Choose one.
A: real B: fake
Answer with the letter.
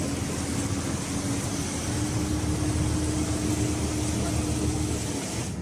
A